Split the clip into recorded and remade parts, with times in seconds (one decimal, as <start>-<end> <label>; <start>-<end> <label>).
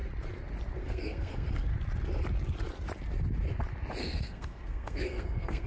0.0-0.8 recorded; 0.8-1.7 remade; 1.7-4.0 recorded; 4.0-5.7 remade